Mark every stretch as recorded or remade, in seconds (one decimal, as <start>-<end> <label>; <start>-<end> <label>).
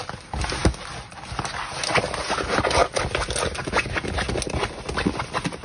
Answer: 0.0-0.6 recorded; 0.6-1.4 remade; 1.4-5.6 recorded